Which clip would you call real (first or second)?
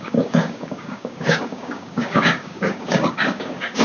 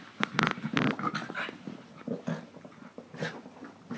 second